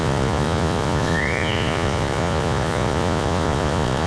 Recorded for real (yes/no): no